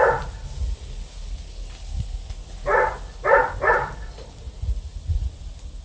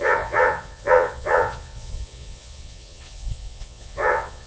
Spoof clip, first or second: second